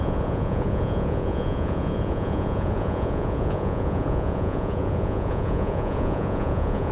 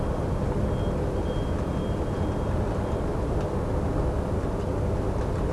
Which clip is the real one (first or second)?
second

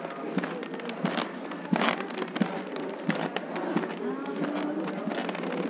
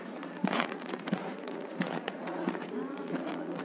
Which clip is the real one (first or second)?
first